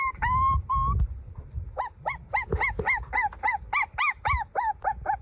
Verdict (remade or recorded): recorded